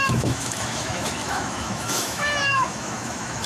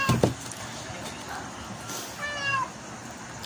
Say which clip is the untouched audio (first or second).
second